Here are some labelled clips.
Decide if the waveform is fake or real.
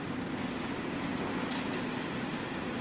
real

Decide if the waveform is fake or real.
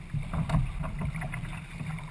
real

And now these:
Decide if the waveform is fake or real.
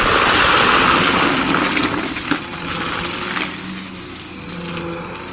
real